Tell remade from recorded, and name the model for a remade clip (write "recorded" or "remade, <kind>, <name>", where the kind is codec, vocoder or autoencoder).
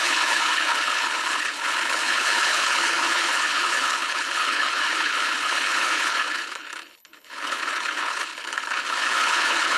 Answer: remade, codec, HILCodec